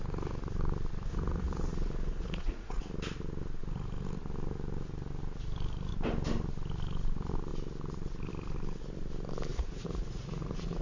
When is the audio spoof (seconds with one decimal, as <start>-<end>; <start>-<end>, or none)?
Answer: 1.1-2.8; 9.5-10.8